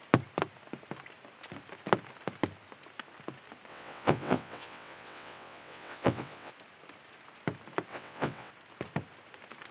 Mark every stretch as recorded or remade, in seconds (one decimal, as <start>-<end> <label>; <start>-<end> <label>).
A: 0.0-3.7 recorded; 3.7-6.5 remade; 6.5-7.9 recorded; 7.9-8.5 remade; 8.5-9.7 recorded